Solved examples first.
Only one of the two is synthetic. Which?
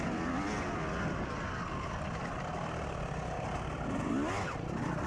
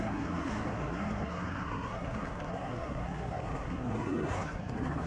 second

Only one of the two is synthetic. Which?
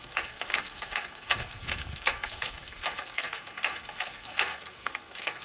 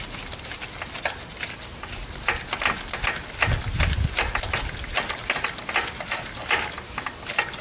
first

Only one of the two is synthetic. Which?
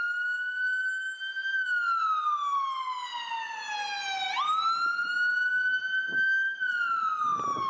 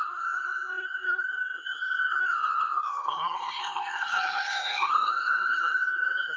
second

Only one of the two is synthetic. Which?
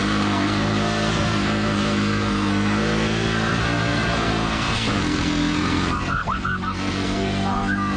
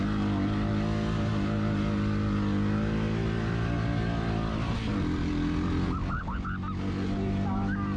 first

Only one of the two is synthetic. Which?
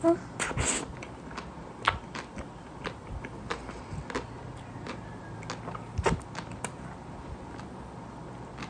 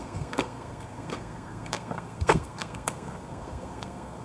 second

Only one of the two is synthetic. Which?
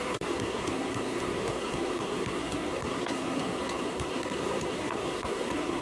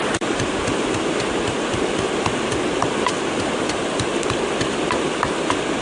first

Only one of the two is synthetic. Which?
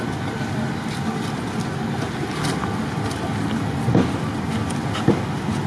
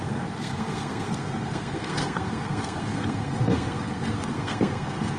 second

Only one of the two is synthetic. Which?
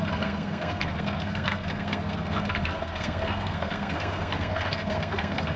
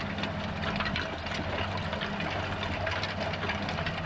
first